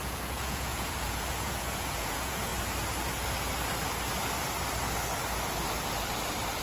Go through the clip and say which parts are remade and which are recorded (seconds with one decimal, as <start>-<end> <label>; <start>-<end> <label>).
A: 0.0-2.5 remade; 2.5-6.6 recorded